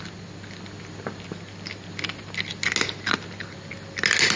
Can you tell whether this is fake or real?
real